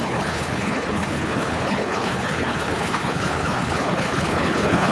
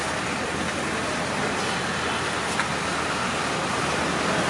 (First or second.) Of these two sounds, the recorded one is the second